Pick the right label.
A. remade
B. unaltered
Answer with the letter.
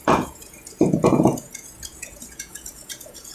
A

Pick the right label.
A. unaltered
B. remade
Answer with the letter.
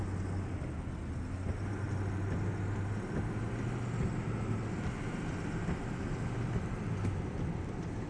A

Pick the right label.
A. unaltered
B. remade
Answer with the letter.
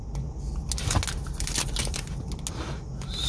A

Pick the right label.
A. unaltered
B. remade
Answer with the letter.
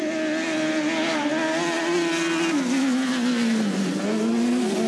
A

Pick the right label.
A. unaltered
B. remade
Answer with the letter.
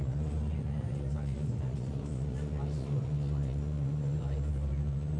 B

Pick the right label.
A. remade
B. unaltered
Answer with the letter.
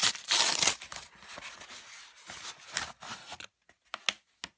B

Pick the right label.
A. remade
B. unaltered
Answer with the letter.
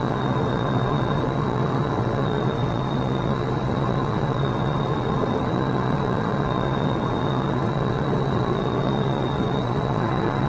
A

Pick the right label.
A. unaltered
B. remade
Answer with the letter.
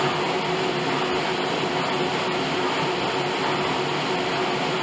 A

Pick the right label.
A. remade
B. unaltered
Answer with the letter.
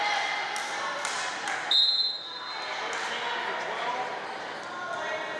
B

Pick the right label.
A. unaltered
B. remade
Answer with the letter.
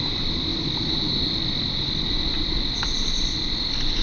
A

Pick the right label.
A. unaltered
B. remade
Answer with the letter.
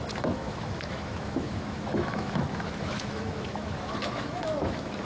B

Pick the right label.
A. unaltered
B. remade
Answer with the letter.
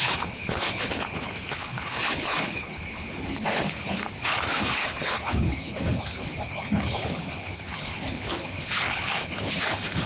B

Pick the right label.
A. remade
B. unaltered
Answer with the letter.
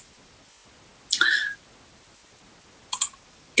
B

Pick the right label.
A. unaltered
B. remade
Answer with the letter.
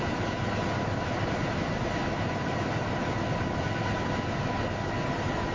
A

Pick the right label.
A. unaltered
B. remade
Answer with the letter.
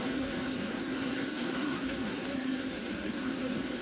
B